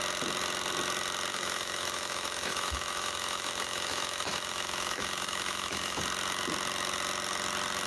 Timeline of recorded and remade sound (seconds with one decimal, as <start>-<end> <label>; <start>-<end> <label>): 0.0-1.3 recorded; 1.3-6.0 remade; 6.0-7.9 recorded